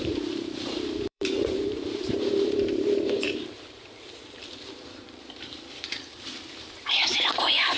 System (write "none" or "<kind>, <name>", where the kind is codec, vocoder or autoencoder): vocoder, BigVGAN v2